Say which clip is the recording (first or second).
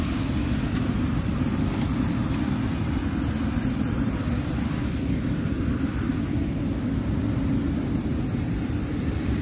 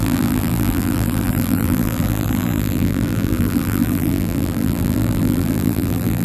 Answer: first